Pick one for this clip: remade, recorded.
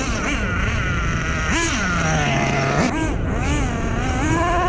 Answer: recorded